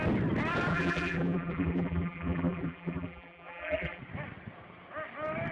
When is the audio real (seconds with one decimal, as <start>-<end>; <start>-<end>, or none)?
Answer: 0.0-0.7; 4.0-5.5